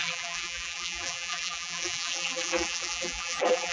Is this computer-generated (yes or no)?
yes